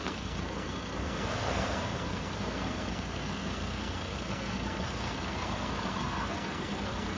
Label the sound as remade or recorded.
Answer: remade